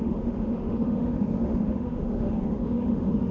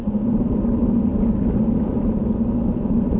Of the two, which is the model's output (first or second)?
first